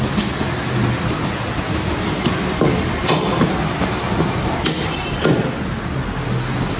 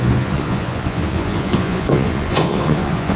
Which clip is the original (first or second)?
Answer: first